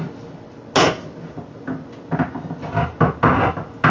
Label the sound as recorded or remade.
recorded